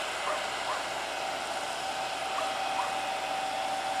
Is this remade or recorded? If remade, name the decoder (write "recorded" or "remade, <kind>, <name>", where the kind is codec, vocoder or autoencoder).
recorded